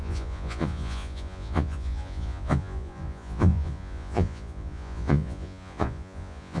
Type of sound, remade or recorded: remade